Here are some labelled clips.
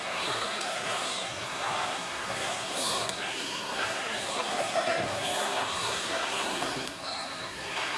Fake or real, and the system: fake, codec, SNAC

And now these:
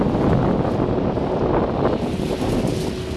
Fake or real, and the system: real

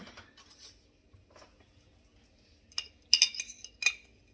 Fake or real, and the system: real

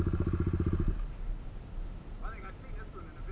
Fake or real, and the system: real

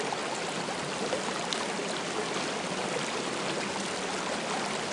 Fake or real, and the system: real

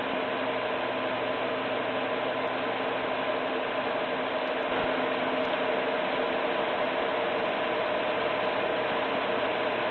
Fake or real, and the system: real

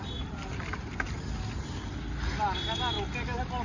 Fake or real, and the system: real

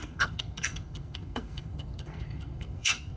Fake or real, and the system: fake, codec, SNAC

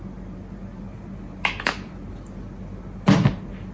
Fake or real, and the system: real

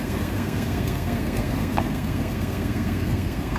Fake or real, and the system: fake, codec, SNAC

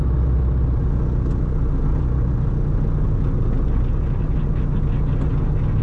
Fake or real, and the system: real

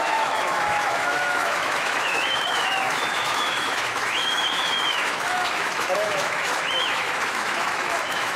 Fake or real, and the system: fake, autoencoder, DAC-VAE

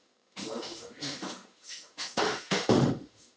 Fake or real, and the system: fake, autoencoder, DAC-VAE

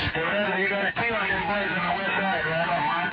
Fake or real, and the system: fake, codec, SNAC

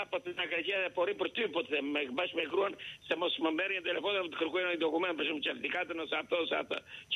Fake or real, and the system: real